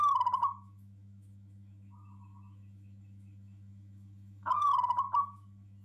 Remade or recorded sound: remade